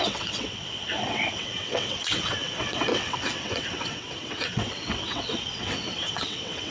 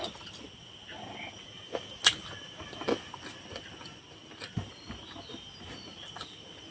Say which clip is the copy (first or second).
first